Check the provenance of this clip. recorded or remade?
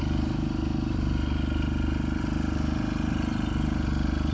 recorded